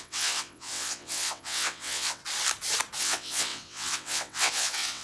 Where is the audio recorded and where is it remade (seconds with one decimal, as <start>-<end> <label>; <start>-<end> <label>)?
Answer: 0.0-2.2 remade; 2.2-3.0 recorded; 3.0-5.0 remade